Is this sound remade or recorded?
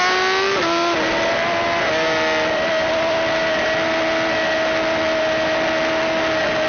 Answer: recorded